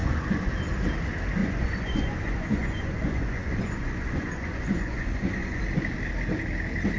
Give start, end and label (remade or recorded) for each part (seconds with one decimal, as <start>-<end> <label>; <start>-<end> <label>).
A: 0.0-0.5 remade; 0.5-1.4 recorded; 1.4-5.6 remade; 5.6-7.0 recorded

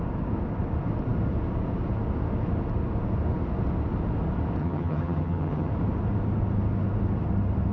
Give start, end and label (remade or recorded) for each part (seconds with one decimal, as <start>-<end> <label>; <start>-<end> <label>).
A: 0.0-4.6 recorded; 4.6-5.7 remade; 5.7-7.7 recorded

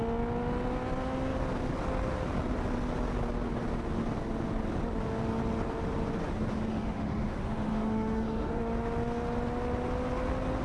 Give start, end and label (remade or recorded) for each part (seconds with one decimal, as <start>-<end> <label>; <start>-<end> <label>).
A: 0.0-6.7 recorded; 6.7-8.6 remade; 8.6-10.6 recorded

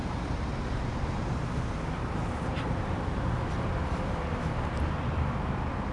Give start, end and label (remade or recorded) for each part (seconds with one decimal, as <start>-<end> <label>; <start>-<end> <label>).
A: 0.0-3.5 remade; 3.5-5.9 recorded

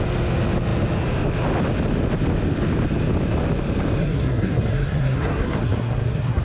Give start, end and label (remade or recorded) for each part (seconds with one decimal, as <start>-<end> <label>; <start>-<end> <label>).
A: 0.0-4.0 recorded; 4.0-6.4 remade